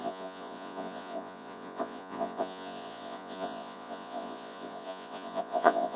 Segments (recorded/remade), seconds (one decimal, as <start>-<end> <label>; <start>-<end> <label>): 0.0-6.0 remade